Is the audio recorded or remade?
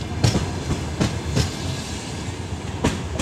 recorded